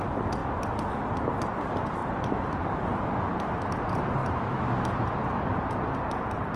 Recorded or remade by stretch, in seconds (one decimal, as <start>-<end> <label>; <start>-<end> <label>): 0.0-4.2 recorded; 4.2-4.8 remade; 4.8-6.6 recorded

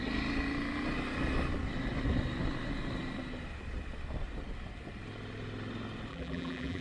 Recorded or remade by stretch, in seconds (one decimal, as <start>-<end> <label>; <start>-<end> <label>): 0.0-6.1 recorded; 6.1-6.8 remade

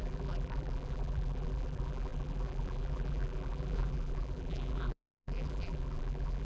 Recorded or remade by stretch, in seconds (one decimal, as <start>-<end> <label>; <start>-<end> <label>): 0.0-6.4 remade

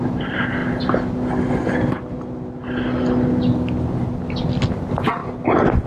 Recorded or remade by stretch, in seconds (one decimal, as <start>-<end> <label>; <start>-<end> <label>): 0.0-5.9 recorded

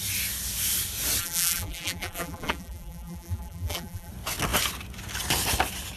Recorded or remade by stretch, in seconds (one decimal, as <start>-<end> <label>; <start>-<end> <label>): 0.0-1.2 recorded; 1.2-4.1 remade; 4.1-6.0 recorded